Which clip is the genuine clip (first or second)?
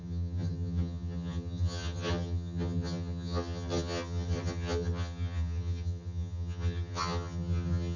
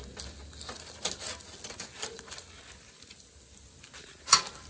second